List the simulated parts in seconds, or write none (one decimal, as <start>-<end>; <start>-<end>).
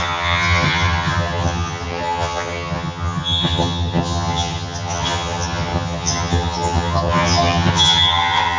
0.0-8.6